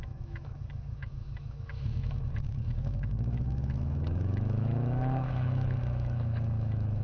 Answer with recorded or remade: remade